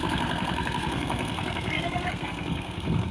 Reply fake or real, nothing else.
fake